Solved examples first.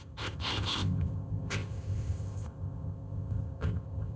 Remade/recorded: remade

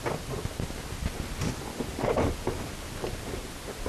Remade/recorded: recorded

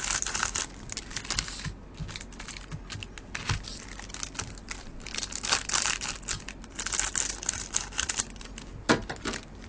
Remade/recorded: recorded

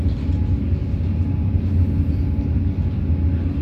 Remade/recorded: recorded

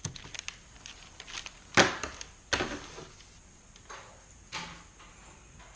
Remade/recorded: recorded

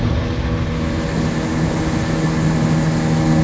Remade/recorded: recorded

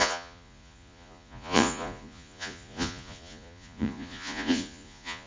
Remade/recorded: remade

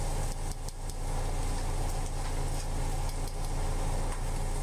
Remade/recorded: recorded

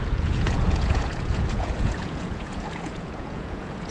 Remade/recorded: remade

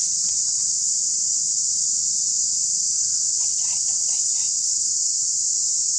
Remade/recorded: remade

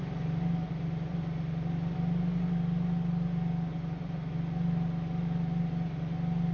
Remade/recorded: recorded